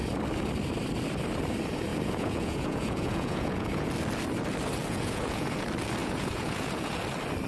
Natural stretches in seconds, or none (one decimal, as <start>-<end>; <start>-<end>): 0.0-1.9; 3.9-4.8; 5.6-6.0; 7.0-7.5